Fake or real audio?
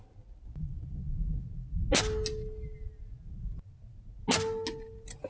real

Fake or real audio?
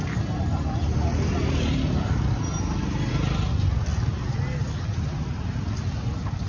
real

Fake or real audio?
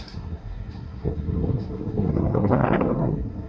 fake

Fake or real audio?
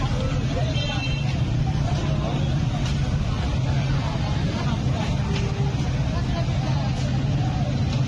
real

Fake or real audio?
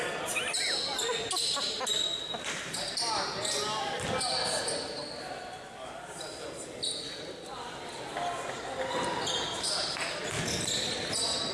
real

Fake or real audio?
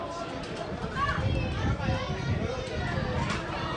real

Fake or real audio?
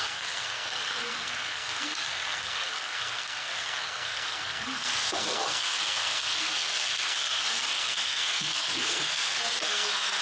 fake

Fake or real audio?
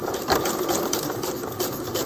real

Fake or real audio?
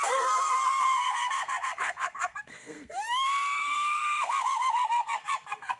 fake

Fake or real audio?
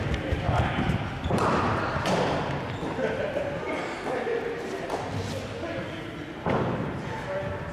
real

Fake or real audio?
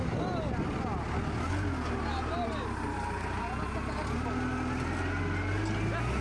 real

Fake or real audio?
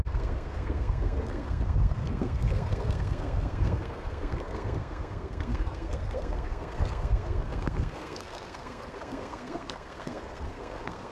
fake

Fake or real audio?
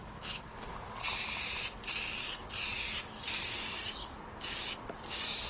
real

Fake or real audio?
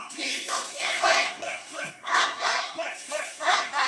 fake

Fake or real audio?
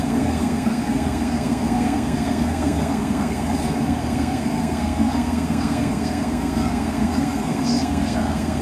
fake